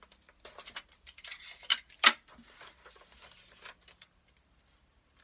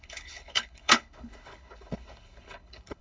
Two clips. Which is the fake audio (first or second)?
second